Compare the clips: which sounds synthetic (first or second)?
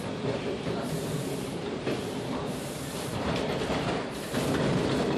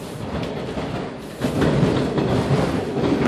first